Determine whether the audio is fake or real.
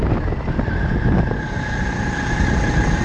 real